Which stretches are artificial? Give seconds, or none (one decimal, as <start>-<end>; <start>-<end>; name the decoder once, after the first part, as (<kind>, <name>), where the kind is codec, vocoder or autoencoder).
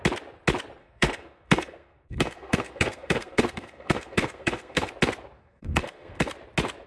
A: 0.8-4.9 (codec, SNAC); 5.4-6.3